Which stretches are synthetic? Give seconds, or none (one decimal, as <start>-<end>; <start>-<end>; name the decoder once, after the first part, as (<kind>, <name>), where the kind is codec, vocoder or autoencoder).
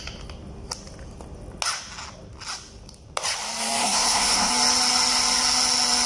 3.8-4.5 (codec, SNAC)